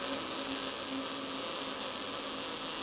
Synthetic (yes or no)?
no